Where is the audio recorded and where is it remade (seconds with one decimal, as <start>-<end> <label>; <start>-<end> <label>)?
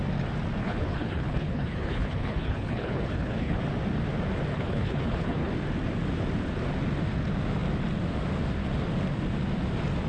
0.0-0.6 recorded; 0.6-3.6 remade; 3.6-4.5 recorded; 4.5-5.5 remade; 5.5-10.1 recorded